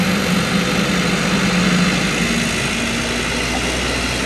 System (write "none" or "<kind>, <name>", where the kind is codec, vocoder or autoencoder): none